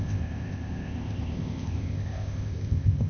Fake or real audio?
fake